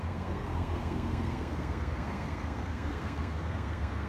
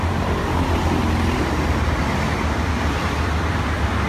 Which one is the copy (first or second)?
first